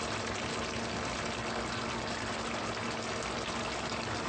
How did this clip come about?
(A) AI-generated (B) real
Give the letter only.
B